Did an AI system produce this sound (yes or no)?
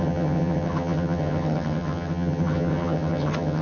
yes